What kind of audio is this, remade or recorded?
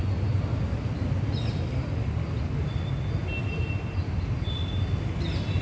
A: recorded